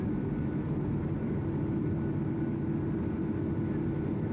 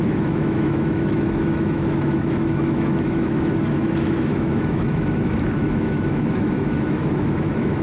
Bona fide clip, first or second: first